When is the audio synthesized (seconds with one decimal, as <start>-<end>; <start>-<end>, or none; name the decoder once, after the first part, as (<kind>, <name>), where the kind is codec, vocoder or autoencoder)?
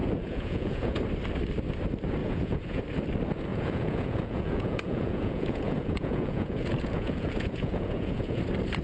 0.0-1.0 (vocoder, Vocos); 2.2-2.8; 3.5-8.4